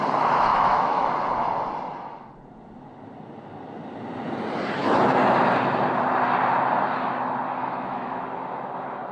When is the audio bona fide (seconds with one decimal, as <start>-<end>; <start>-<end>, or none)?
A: 0.0-0.5; 1.1-7.6; 8.2-9.1